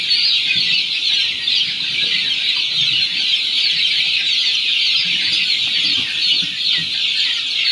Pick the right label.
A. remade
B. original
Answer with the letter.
B